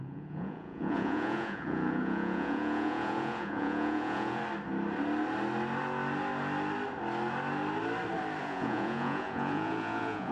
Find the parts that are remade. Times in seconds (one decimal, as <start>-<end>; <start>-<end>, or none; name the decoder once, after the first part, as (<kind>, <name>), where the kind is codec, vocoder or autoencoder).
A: 0.0-4.4 (vocoder, Vocos); 8.4-10.3